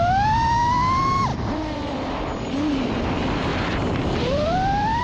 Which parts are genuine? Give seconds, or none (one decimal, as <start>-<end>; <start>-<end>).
0.0-1.3; 2.5-3.5